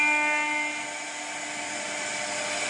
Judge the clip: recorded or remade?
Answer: recorded